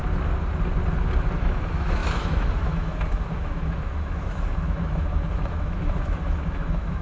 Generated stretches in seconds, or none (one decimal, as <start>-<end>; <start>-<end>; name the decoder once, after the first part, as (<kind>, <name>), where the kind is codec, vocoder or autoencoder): 1.4-7.0 (autoencoder, DAC-VAE)